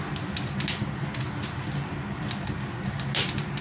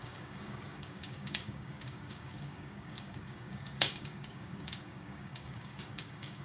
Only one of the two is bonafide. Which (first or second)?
first